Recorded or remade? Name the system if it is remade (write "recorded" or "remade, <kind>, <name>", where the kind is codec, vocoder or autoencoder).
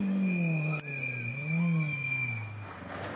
recorded